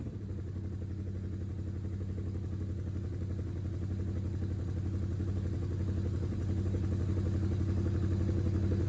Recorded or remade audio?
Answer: recorded